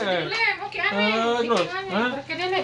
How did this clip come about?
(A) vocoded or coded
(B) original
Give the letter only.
B